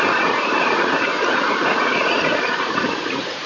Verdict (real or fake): fake